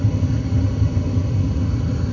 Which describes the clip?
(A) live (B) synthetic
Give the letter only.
A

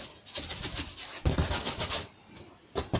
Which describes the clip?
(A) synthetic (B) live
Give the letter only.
A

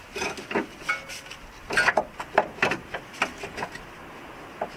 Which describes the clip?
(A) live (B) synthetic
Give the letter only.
A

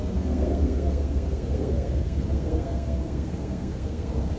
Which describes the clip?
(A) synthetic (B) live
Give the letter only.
A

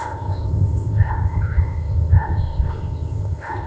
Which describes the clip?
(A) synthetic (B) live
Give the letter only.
A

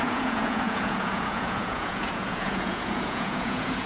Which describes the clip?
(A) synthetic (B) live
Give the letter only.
A